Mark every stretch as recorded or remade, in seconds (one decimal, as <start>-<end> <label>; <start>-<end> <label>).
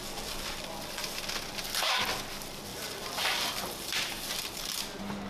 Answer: 0.0-0.7 remade; 0.7-2.7 recorded; 2.7-4.8 remade; 4.8-5.3 recorded